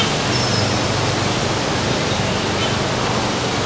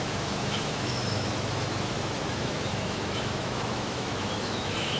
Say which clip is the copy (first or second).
second